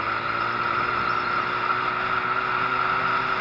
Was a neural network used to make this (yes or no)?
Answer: no